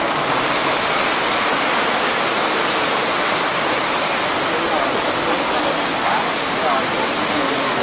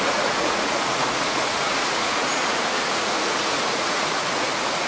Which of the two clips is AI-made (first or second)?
second